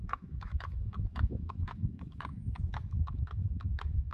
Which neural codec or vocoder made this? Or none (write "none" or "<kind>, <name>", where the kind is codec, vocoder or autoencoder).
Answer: autoencoder, DAC-VAE